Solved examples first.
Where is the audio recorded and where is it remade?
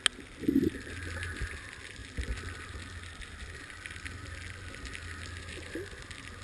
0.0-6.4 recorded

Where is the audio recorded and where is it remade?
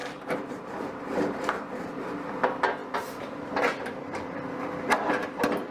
0.0-1.8 remade; 1.8-5.7 recorded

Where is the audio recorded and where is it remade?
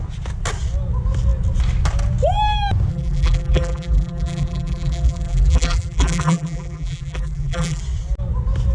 0.0-2.9 recorded; 2.9-7.8 remade; 7.8-8.7 recorded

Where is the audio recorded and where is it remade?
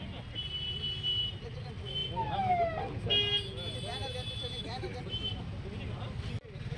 0.0-6.8 recorded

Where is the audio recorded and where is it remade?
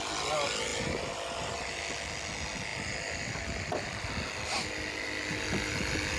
0.0-0.7 recorded; 0.7-1.8 remade; 1.8-2.7 recorded; 2.7-4.1 remade; 4.1-6.2 recorded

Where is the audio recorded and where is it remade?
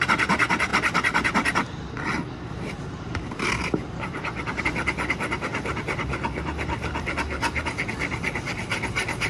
0.0-9.3 recorded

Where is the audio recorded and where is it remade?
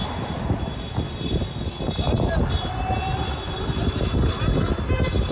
0.0-1.7 remade; 1.7-3.1 recorded; 3.1-4.0 remade; 4.0-5.3 recorded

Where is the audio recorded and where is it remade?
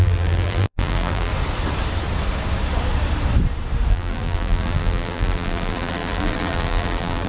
0.0-1.3 remade; 1.3-3.9 recorded; 3.9-7.3 remade